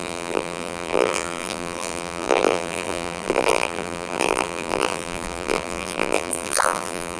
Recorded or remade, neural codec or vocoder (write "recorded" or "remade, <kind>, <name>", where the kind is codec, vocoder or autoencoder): remade, vocoder, BigVGAN v2